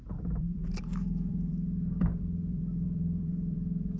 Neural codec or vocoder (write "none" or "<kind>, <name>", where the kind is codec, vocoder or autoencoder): vocoder, BigVGAN v2